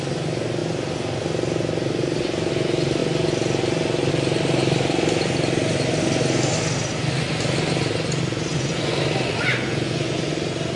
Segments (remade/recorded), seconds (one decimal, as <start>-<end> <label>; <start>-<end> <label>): 0.0-8.5 recorded; 8.5-9.0 remade; 9.0-9.5 recorded; 9.5-10.2 remade; 10.2-10.8 recorded